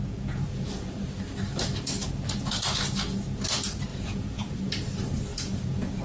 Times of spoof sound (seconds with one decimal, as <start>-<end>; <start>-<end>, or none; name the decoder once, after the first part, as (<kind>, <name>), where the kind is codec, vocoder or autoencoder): 0.0-0.9 (vocoder, Vocos); 3.9-4.6; 5.3-6.0